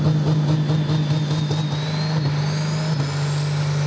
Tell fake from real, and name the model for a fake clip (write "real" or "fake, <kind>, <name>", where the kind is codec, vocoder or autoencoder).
real